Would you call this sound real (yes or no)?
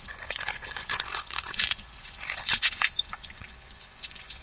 no